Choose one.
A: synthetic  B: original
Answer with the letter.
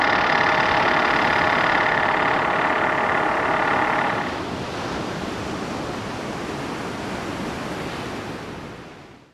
B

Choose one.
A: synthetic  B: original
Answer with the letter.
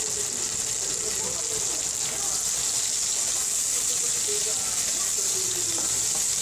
B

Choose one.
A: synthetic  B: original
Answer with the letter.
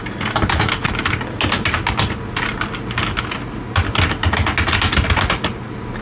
B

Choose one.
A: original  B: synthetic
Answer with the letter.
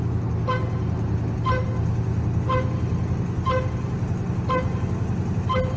A